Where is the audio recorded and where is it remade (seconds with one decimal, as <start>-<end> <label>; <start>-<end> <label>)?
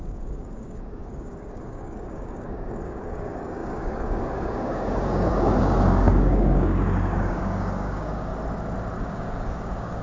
0.0-8.3 remade; 8.3-9.0 recorded; 9.0-10.0 remade